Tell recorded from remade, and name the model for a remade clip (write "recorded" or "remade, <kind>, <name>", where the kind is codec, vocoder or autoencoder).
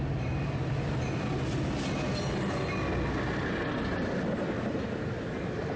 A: recorded